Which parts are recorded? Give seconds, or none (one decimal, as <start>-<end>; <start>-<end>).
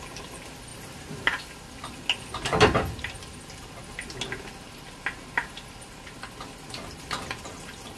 0.0-0.7; 1.4-8.0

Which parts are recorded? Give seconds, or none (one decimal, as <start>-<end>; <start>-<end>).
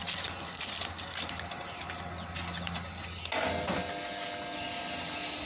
0.0-5.5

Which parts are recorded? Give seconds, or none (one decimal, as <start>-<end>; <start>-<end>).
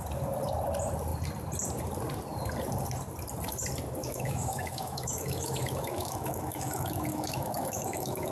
0.0-4.0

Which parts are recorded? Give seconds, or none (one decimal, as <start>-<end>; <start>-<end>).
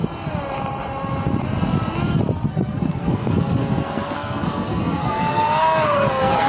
0.0-2.5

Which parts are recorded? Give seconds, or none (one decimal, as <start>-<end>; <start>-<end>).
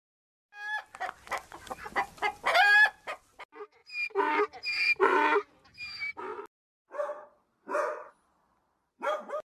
0.0-3.8; 4.4-9.4